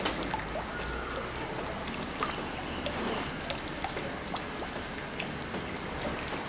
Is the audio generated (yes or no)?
no